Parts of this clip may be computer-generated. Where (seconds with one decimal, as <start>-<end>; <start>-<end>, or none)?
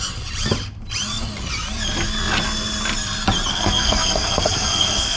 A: 3.5-5.2